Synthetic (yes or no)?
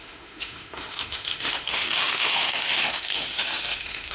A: yes